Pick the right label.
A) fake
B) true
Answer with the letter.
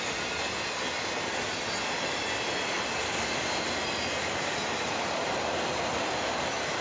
B